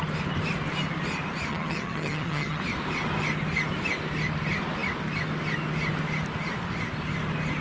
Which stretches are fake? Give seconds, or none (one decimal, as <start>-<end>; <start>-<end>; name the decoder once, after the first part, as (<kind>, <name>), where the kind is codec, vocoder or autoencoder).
1.5-2.6 (vocoder, HiFi-GAN)